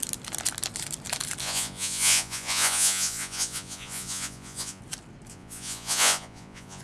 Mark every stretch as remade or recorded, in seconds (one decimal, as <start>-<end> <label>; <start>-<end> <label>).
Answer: 0.0-1.4 recorded; 1.4-4.8 remade; 4.8-5.3 recorded; 5.3-6.8 remade

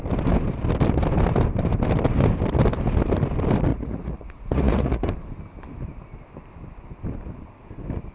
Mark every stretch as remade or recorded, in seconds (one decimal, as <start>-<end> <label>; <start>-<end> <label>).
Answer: 0.0-3.7 recorded; 3.7-5.1 remade; 5.1-8.1 recorded